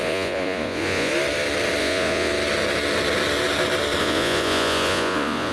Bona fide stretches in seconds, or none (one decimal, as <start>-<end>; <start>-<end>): 1.1-1.8; 2.3-4.0